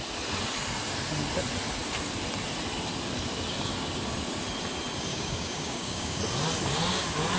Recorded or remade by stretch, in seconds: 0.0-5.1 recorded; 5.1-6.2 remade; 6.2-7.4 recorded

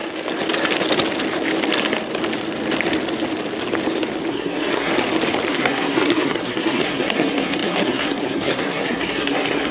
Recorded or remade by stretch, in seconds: 0.0-4.3 recorded; 4.3-4.9 remade; 4.9-5.5 recorded; 5.5-9.7 remade

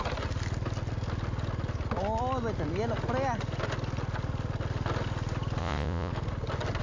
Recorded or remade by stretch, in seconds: 0.0-5.6 recorded; 5.6-6.1 remade; 6.1-6.8 recorded

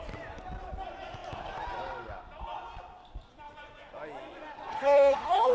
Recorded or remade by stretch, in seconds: 0.0-4.7 recorded; 4.7-5.5 remade